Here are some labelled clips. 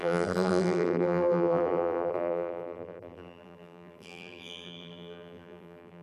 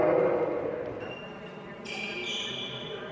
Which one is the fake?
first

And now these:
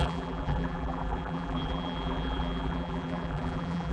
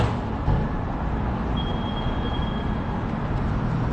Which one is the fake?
first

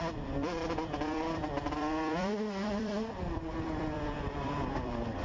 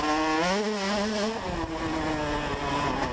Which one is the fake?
first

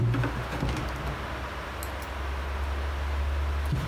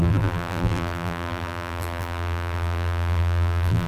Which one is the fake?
second